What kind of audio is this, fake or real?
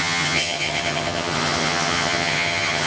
fake